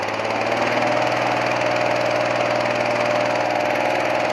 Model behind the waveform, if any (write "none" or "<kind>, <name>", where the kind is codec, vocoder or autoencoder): none